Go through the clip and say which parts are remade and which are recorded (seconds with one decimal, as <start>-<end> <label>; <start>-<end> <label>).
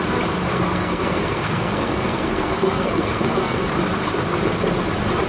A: 0.0-0.5 recorded; 0.5-3.7 remade; 3.7-5.3 recorded